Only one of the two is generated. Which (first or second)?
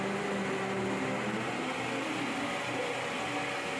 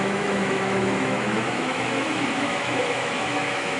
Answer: second